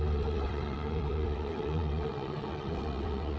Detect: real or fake fake